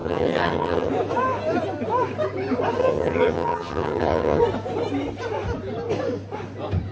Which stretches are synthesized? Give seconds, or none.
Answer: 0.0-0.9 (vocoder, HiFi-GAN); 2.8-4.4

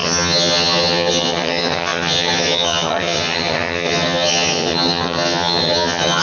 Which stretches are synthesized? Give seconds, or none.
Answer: 0.0-6.2 (vocoder, HiFi-GAN)

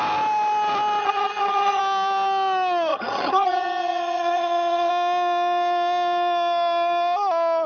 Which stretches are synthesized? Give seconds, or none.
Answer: 1.0-1.8 (vocoder, HiFi-GAN); 2.9-4.9

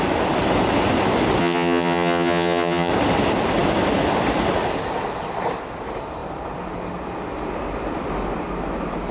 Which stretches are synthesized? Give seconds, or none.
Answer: 1.4-2.9 (vocoder, HiFi-GAN)

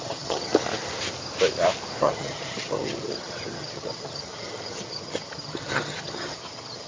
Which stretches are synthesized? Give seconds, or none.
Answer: 0.0-0.5 (vocoder, HiFi-GAN); 2.0-6.9

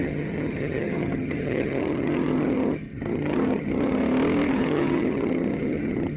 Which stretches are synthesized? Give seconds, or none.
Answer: 0.0-4.0 (vocoder, HiFi-GAN); 4.5-6.2

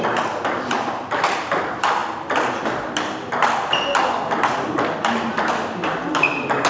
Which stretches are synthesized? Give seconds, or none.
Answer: none